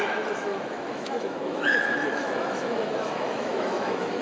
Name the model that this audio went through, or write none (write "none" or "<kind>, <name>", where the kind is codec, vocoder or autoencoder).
autoencoder, DAC-VAE